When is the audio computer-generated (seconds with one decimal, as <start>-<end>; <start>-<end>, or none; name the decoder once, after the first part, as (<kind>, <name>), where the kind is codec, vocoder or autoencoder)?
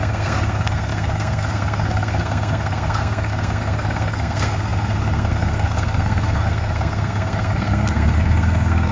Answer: 0.0-8.9 (codec, SNAC)